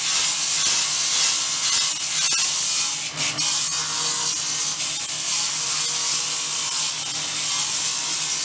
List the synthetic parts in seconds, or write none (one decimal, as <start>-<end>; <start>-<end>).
none